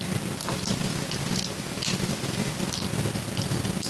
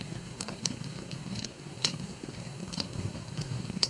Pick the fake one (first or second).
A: second